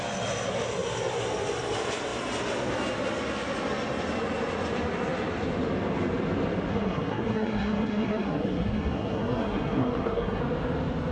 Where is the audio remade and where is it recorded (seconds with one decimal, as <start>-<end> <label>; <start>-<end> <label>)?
0.0-6.7 recorded; 6.7-10.4 remade; 10.4-11.1 recorded